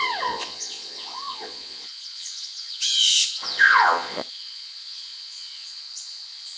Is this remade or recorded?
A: remade